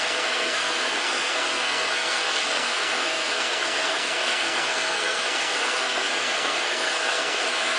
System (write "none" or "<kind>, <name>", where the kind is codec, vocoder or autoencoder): codec, SNAC